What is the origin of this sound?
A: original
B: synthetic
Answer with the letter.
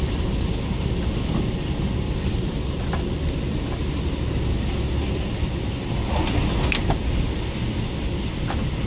A